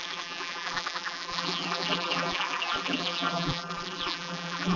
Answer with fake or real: fake